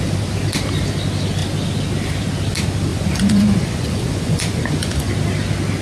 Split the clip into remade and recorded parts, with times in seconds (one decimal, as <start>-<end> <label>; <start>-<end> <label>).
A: 0.0-2.9 recorded; 2.9-5.1 remade; 5.1-5.8 recorded

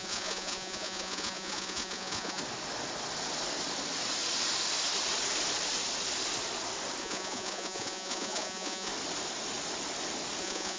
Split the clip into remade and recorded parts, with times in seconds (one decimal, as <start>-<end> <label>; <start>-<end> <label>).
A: 0.0-2.4 remade; 2.4-7.0 recorded; 7.0-8.9 remade; 8.9-10.4 recorded; 10.4-10.8 remade

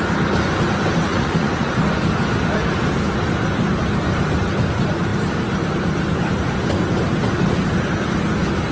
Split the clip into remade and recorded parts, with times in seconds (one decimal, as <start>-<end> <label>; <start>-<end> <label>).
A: 0.0-1.1 recorded; 1.1-1.7 remade; 1.7-8.7 recorded

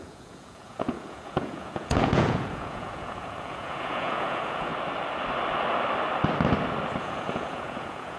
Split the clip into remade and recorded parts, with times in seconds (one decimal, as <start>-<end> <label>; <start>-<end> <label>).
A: 0.0-4.7 remade; 4.7-7.0 recorded; 7.0-8.2 remade

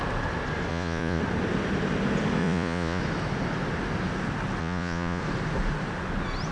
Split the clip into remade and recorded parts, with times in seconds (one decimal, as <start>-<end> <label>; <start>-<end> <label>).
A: 0.0-0.7 recorded; 0.7-1.2 remade; 1.2-2.4 recorded; 2.4-3.0 remade; 3.0-4.6 recorded; 4.6-5.2 remade; 5.2-6.5 recorded